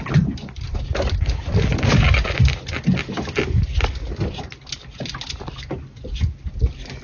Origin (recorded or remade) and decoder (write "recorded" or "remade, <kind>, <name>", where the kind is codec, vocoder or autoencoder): recorded